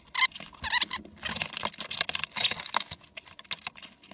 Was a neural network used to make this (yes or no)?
no